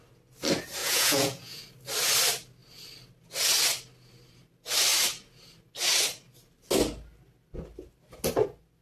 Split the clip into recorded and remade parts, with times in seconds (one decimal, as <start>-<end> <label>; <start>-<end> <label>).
0.0-0.8 recorded; 0.8-1.6 remade; 1.6-8.8 recorded